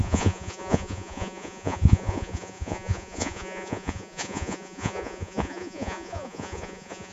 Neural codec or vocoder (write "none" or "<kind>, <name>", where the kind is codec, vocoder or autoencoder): vocoder, Vocos